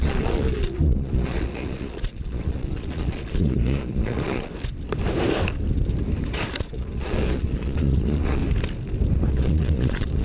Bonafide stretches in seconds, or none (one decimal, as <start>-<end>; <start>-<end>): 4.5-6.7; 8.4-9.3